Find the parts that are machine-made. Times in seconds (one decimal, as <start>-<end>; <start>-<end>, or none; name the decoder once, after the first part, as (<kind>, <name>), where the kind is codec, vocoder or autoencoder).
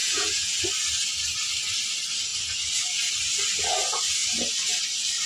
0.0-0.6 (vocoder, Vocos)